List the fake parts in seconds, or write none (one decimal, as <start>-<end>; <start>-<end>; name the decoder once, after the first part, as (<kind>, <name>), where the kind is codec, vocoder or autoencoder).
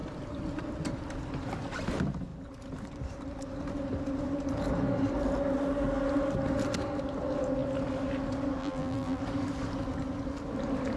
8.6-9.2 (vocoder, BigVGAN v2)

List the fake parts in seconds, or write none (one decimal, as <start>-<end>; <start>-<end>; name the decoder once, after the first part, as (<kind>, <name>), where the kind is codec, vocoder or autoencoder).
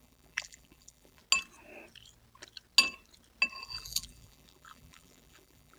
0.0-1.2 (vocoder, BigVGAN v2); 3.6-5.8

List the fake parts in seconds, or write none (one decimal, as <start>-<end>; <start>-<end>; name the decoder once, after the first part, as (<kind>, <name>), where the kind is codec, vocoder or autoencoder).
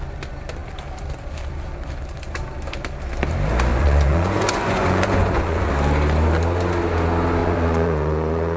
3.7-5.7 (vocoder, Vocos); 7.4-8.6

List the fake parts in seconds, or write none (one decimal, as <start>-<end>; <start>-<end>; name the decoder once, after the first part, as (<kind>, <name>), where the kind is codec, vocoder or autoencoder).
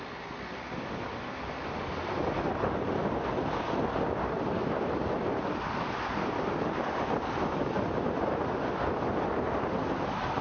none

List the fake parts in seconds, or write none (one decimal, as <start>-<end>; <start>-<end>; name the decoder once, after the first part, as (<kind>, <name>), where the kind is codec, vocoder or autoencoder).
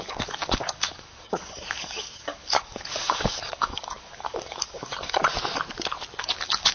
0.0-5.2 (codec, DAC); 6.2-6.7